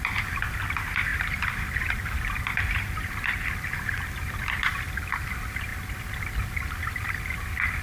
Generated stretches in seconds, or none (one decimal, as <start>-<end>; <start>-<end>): none